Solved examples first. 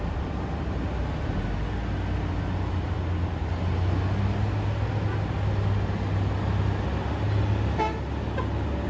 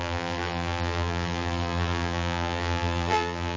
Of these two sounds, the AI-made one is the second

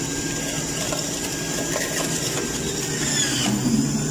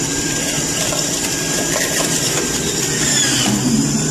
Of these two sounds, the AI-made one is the second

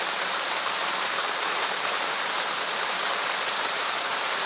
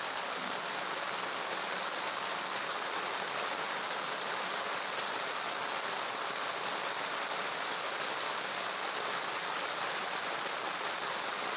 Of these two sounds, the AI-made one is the first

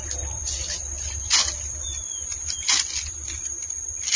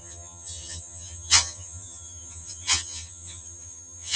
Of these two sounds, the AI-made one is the second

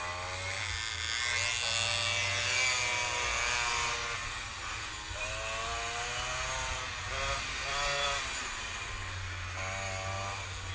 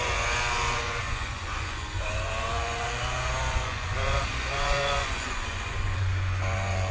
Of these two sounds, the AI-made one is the second